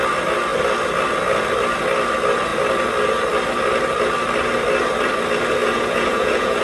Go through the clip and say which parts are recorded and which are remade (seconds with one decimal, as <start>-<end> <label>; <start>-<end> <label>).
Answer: 0.0-5.6 recorded; 5.6-6.6 remade